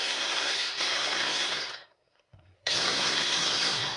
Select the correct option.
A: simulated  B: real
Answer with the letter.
A